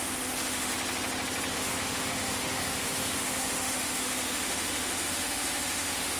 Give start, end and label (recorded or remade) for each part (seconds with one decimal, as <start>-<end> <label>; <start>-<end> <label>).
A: 0.0-0.7 remade; 0.7-1.5 recorded; 1.5-6.2 remade